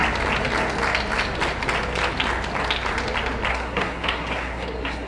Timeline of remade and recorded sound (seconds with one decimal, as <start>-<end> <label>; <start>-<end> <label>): 0.0-3.5 recorded; 3.5-5.1 remade